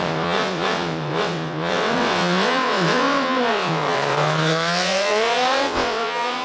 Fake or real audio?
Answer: fake